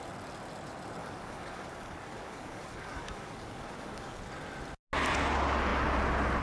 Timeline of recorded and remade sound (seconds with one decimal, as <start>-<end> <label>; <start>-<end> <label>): 0.0-1.0 recorded; 1.0-4.2 remade; 4.2-6.4 recorded